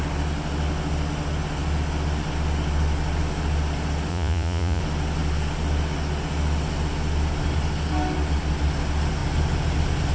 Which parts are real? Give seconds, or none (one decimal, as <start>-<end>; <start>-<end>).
0.0-4.1; 4.8-10.1